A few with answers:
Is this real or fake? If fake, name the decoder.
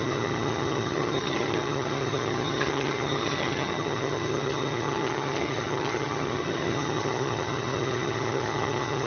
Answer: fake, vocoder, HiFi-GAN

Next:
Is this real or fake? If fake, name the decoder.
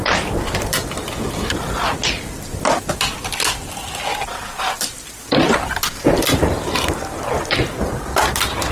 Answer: real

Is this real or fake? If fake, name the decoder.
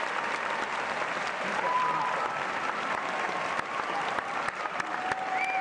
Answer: real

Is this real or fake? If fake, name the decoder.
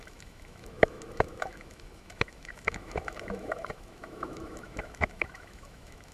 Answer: fake, autoencoder, DAC-VAE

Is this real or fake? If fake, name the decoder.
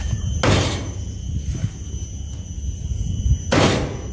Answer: real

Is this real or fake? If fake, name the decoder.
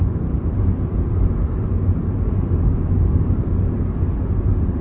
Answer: real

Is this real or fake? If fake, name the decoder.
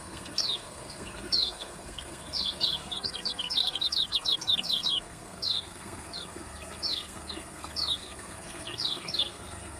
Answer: fake, codec, SNAC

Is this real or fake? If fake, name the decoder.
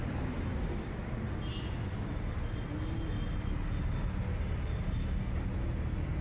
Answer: real